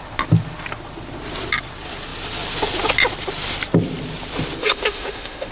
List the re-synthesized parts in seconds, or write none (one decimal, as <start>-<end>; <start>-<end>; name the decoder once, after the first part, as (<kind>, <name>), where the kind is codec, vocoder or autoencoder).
4.6-5.5 (autoencoder, DAC-VAE)